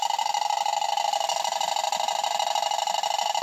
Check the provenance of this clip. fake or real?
real